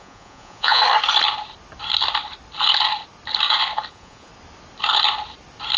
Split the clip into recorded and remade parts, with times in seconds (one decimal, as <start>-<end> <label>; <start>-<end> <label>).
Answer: 0.0-0.8 remade; 0.8-3.9 recorded; 3.9-4.3 remade; 4.3-5.8 recorded